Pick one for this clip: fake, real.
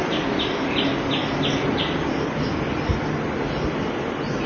real